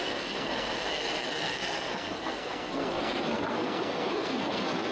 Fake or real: fake